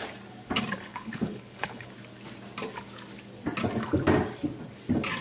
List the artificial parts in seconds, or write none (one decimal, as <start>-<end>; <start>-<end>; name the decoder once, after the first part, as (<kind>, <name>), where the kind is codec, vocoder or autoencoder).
0.9-1.9 (codec, HILCodec)